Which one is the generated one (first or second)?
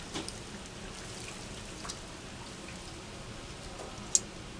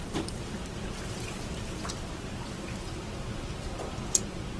second